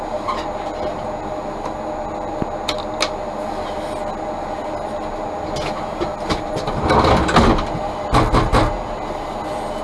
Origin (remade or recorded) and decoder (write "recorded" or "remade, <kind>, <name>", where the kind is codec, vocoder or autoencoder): recorded